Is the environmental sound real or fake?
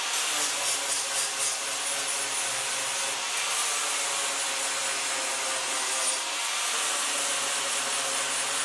real